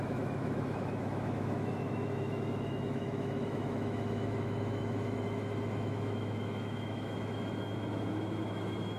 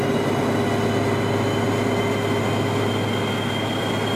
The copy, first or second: first